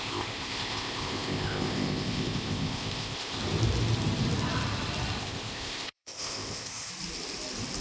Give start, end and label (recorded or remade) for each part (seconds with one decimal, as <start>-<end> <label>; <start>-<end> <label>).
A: 0.0-3.4 remade; 3.4-5.2 recorded; 5.2-6.9 remade; 6.9-7.8 recorded